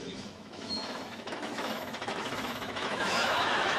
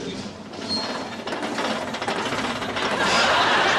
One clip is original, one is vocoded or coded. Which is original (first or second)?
second